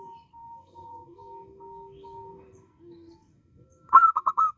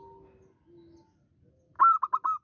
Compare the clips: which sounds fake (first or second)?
first